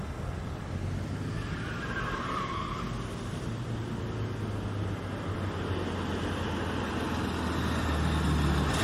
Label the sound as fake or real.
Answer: real